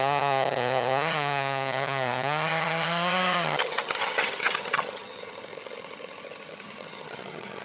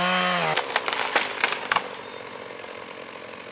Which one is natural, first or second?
second